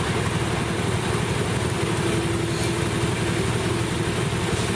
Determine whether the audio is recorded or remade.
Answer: recorded